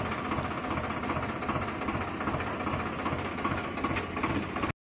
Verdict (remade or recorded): recorded